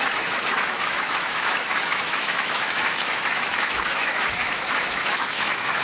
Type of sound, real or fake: fake